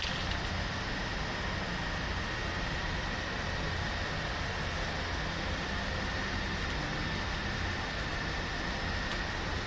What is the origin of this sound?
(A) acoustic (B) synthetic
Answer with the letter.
A